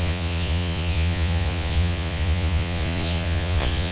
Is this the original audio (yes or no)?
no